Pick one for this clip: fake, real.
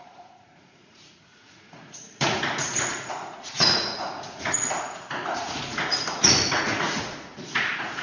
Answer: fake